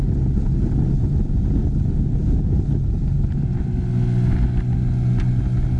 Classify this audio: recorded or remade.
recorded